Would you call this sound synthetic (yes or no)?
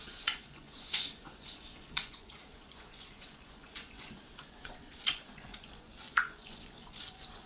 yes